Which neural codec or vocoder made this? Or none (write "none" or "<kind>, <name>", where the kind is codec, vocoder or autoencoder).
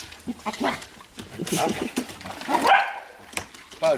none